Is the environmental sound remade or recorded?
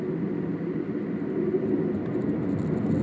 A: recorded